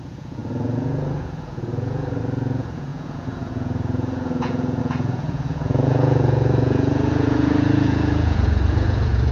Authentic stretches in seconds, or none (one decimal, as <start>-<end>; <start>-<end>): none